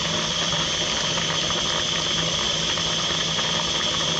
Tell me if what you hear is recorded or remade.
recorded